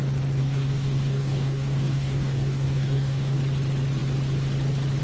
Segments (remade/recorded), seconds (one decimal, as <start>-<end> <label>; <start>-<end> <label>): 0.0-0.4 recorded; 0.4-3.4 remade; 3.4-5.0 recorded